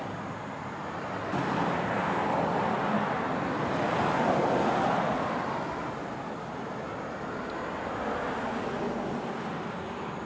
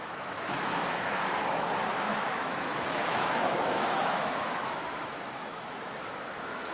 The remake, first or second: second